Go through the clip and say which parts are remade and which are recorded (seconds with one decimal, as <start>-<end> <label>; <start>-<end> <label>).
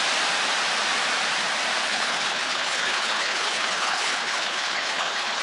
0.0-1.9 recorded; 1.9-5.4 remade